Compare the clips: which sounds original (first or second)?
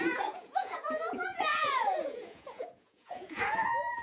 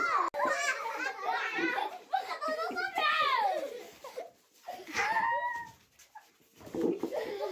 second